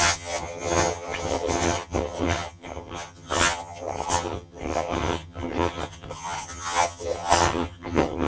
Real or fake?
fake